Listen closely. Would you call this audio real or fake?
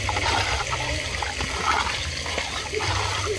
real